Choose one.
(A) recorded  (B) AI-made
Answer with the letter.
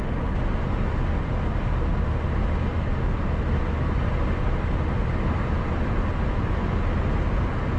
A